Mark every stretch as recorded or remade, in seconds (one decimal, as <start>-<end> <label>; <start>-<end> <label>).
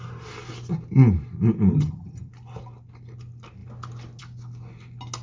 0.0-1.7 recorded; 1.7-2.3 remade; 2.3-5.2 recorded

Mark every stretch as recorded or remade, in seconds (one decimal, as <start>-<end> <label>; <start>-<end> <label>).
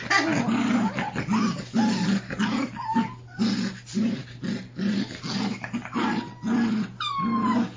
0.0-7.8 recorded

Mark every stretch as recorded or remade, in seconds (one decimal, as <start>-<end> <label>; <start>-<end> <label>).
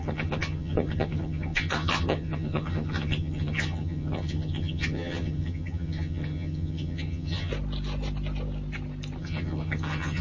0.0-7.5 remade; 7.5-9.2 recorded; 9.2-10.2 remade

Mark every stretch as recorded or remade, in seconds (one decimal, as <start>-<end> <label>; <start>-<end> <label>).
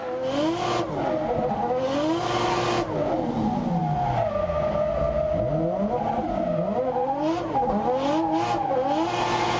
0.0-9.6 recorded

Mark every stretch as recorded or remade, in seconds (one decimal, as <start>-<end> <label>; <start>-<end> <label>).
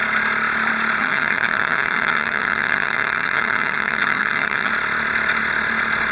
0.0-1.0 recorded; 1.0-4.7 remade; 4.7-6.1 recorded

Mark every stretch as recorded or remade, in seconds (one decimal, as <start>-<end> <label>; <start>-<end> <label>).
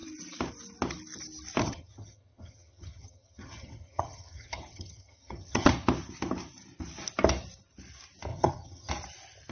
0.0-1.6 recorded; 1.6-5.7 remade; 5.7-8.3 recorded; 8.3-8.9 remade; 8.9-9.5 recorded